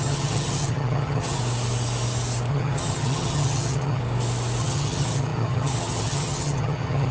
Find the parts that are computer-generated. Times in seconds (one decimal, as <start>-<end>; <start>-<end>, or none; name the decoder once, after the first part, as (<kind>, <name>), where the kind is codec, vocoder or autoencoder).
0.0-1.4 (vocoder, HiFi-GAN); 2.5-4.0; 4.6-7.1

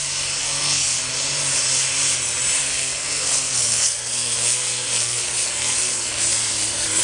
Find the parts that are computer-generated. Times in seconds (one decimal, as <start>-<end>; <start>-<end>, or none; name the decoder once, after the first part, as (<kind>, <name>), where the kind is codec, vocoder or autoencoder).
0.4-1.0 (codec, SNAC); 2.6-7.0

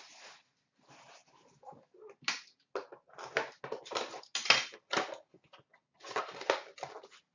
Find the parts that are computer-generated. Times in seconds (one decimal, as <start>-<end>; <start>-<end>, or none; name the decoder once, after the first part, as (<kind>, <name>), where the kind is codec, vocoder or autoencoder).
none

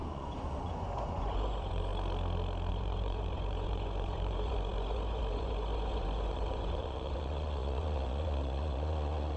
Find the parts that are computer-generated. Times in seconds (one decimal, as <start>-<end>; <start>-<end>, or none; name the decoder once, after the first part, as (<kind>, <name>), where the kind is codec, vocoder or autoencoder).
0.0-1.9 (vocoder, Vocos); 2.7-9.4

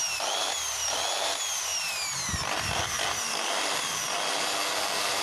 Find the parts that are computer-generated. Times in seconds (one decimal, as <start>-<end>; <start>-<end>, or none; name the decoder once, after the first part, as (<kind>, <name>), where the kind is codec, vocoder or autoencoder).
none